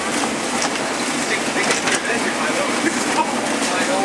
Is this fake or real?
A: fake